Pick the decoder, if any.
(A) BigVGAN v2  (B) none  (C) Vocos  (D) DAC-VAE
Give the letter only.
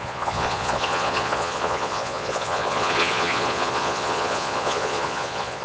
C